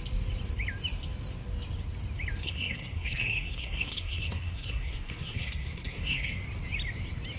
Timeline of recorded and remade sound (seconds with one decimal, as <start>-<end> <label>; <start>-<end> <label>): 0.0-2.4 recorded; 2.4-6.4 remade; 6.4-7.4 recorded